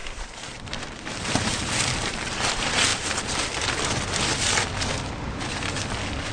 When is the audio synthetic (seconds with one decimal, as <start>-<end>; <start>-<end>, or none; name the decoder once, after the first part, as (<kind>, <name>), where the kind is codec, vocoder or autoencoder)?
0.0-2.9 (vocoder, BigVGAN v2)